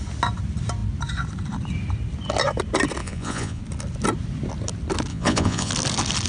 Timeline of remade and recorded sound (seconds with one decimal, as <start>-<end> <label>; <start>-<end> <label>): 0.0-3.0 recorded; 3.0-3.6 remade; 3.6-5.1 recorded; 5.1-5.7 remade; 5.7-6.3 recorded